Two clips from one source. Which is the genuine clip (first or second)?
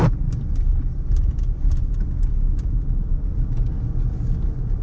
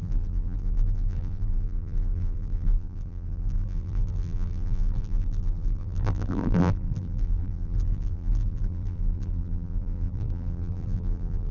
first